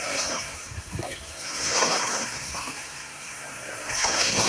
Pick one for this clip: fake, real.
fake